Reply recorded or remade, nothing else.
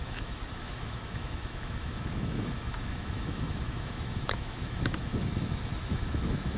remade